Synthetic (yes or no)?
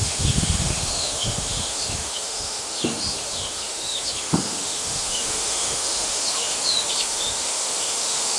yes